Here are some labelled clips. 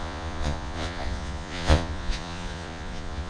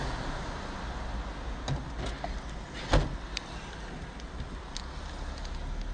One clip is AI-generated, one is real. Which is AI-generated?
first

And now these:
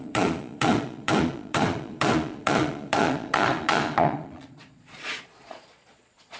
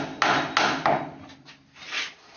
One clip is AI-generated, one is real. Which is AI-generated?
first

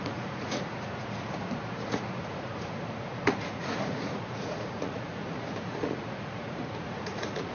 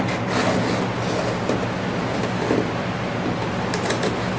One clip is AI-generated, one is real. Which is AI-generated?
first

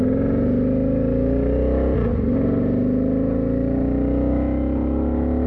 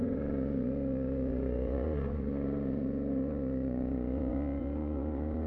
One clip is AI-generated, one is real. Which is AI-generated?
second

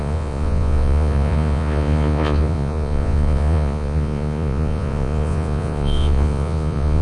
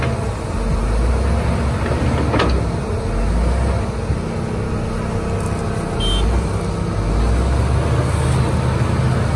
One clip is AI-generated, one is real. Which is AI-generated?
first